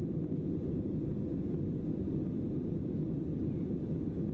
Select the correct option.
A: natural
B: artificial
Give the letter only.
A